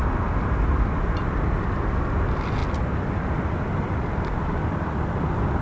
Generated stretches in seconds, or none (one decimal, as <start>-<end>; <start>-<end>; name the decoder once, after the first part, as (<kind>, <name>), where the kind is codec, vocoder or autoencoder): none